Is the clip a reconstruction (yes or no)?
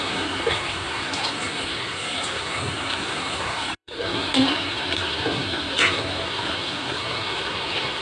yes